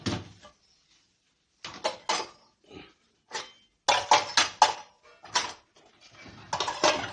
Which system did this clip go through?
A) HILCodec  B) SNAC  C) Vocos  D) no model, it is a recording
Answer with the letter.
D